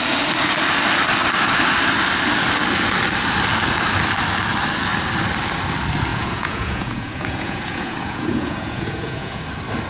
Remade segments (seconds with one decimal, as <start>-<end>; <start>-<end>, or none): 6.1-9.4